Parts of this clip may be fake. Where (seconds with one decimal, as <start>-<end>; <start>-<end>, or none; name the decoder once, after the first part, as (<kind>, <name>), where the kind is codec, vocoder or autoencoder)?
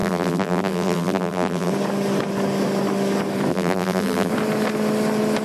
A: 0.0-1.7 (vocoder, BigVGAN v2); 3.5-4.3